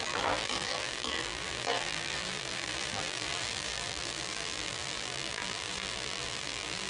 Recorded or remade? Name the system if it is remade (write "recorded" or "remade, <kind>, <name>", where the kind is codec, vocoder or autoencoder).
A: remade, vocoder, BigVGAN v2